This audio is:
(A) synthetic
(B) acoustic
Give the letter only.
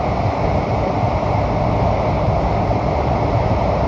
B